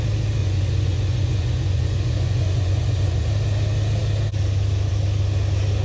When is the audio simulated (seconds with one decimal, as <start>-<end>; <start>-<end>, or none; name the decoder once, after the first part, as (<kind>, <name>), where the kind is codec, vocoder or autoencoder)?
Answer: 0.4-3.2 (vocoder, Vocos)